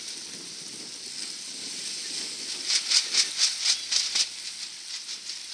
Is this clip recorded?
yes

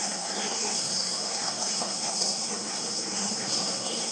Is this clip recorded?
no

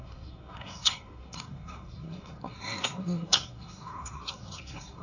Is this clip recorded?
no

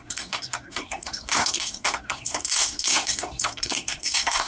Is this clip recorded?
no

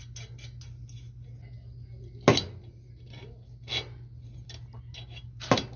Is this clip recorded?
yes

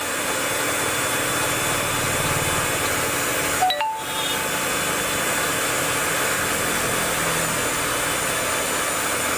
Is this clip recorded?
yes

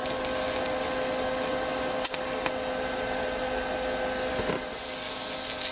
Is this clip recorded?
yes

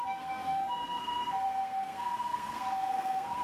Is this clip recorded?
no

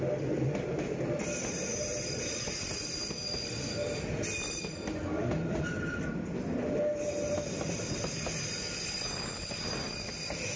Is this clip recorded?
yes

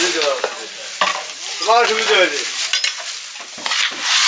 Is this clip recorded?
yes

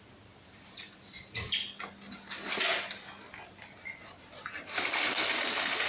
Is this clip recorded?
yes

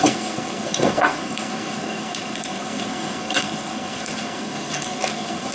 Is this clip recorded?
no